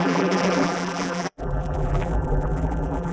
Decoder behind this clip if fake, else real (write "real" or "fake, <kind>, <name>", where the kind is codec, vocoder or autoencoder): fake, vocoder, BigVGAN v2